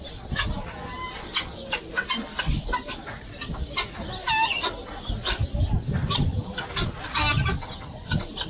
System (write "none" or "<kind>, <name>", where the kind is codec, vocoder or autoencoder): none